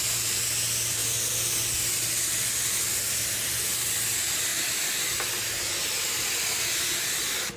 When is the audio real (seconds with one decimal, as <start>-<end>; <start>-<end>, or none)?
0.0-7.6